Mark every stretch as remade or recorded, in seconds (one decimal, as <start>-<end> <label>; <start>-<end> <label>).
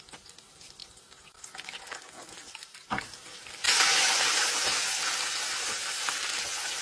0.0-6.8 recorded